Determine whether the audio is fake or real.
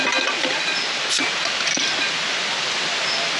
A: real